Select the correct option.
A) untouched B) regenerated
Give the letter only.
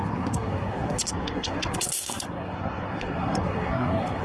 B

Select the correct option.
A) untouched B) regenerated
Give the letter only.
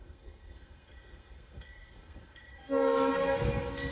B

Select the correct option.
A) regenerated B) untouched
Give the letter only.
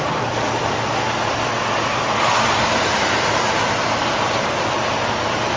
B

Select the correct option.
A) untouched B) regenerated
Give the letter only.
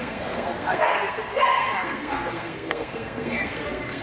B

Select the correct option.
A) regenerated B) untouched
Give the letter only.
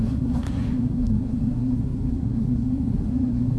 A